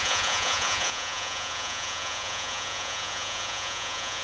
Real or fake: fake